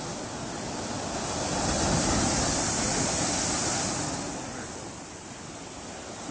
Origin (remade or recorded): recorded